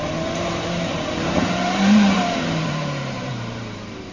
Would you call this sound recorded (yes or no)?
no